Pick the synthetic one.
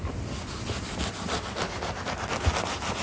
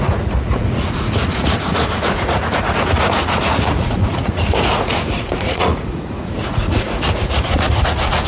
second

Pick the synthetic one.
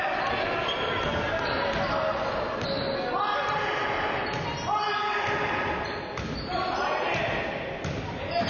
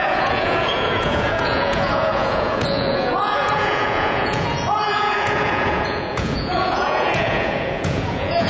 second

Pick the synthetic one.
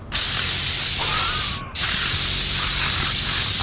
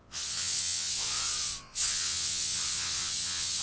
second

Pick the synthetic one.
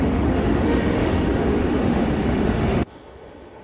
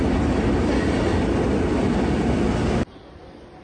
first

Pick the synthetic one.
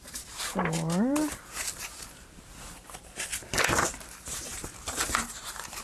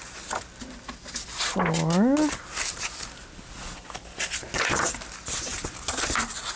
first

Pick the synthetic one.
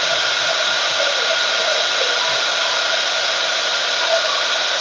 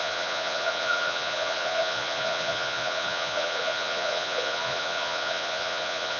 second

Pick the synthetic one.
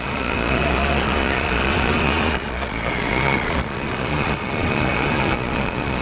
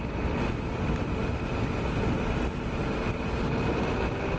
first